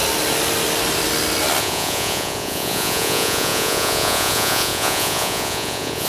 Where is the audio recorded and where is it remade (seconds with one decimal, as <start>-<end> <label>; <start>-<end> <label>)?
0.0-1.6 recorded; 1.6-6.1 remade